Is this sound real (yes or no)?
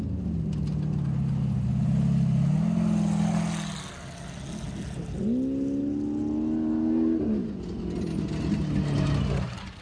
yes